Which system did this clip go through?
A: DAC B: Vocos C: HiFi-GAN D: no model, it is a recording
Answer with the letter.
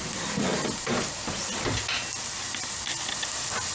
D